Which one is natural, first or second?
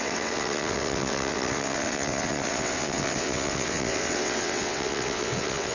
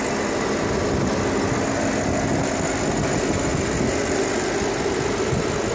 second